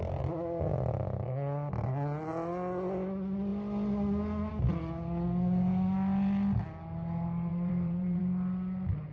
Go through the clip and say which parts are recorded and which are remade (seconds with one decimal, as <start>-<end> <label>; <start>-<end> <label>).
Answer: 0.0-7.5 recorded; 7.5-8.2 remade; 8.2-9.1 recorded